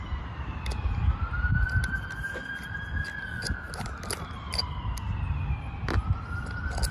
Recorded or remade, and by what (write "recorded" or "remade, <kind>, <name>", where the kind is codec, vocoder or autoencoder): recorded